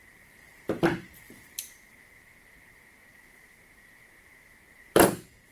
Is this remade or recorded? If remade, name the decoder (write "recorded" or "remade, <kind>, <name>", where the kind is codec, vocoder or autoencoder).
remade, vocoder, BigVGAN v2